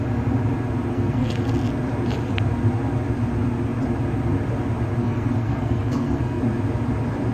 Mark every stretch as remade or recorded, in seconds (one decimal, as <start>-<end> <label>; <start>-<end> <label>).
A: 0.0-0.9 recorded; 0.9-1.5 remade; 1.5-5.0 recorded; 5.0-6.4 remade; 6.4-7.3 recorded